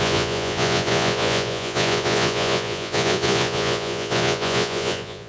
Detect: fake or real fake